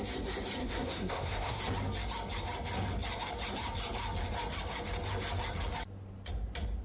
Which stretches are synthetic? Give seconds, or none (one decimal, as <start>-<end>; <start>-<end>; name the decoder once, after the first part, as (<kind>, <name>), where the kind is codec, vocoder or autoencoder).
0.6-1.6 (codec, SNAC)